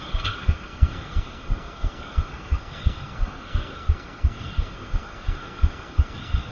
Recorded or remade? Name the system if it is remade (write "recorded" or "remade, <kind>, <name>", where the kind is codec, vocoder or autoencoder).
remade, codec, SNAC